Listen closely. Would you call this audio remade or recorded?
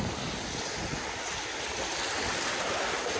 recorded